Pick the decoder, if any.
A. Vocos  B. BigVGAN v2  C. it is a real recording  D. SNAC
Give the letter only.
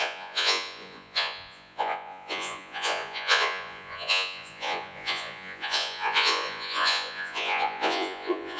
A